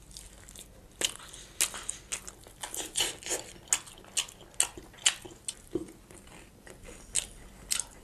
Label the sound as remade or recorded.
recorded